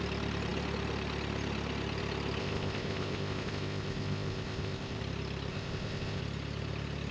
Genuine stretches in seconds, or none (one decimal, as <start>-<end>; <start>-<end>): 0.0-2.4; 5.0-5.5; 6.2-7.1